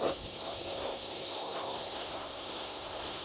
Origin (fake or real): fake